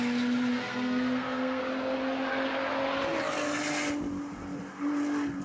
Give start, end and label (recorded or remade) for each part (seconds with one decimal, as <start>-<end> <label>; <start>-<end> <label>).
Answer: 0.0-0.5 recorded; 0.5-1.6 remade; 1.6-5.4 recorded

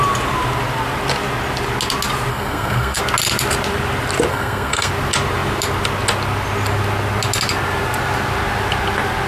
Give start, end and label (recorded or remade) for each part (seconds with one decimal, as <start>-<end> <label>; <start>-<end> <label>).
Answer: 0.0-2.3 recorded; 2.3-3.0 remade; 3.0-4.3 recorded; 4.3-4.9 remade; 4.9-9.3 recorded

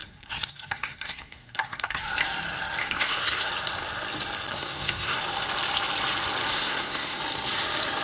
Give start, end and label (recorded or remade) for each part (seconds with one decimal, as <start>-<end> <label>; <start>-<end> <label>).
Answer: 0.0-2.0 remade; 2.0-2.8 recorded; 2.8-3.5 remade; 3.5-4.5 recorded; 4.5-5.2 remade; 5.2-6.5 recorded; 6.5-7.2 remade; 7.2-8.0 recorded